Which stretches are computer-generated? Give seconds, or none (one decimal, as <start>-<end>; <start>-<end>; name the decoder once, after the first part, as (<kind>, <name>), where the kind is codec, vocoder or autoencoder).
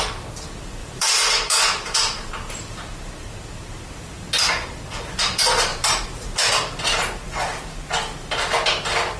0.8-2.3 (vocoder, BigVGAN v2); 5.7-6.5